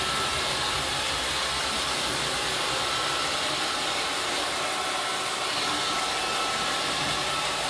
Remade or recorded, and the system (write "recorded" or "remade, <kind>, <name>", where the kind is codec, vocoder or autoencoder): recorded